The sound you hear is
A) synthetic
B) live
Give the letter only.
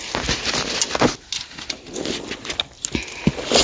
B